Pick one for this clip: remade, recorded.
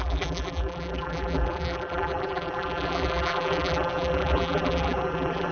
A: remade